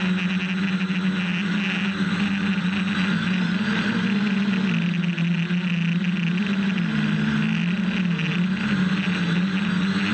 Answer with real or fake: real